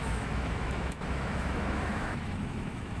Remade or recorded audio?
remade